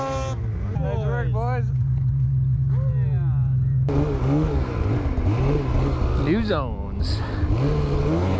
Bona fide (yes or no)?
yes